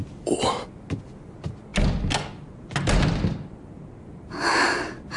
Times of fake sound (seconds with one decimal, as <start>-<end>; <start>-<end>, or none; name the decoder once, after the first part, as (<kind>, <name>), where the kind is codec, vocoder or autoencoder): none